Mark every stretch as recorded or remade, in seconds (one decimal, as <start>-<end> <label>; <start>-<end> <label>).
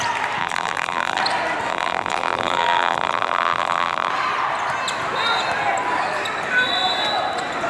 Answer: 0.0-0.4 recorded; 0.4-1.2 remade; 1.2-1.7 recorded; 1.7-4.1 remade; 4.1-7.7 recorded